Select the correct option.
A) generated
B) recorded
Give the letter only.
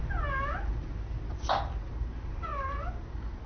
B